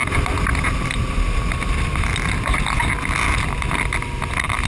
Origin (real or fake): real